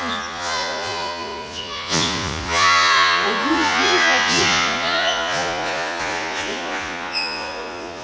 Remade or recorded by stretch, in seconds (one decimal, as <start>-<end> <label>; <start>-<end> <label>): 0.0-8.0 remade